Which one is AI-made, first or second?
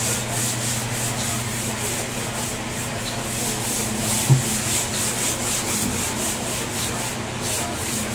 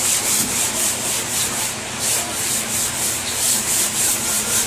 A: second